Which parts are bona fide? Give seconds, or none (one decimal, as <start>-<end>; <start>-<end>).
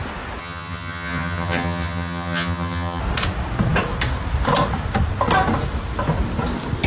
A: 0.0-0.4; 3.0-6.9